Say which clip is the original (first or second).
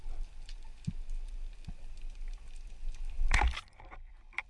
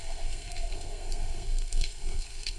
first